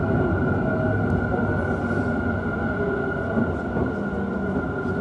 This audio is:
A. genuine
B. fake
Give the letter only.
A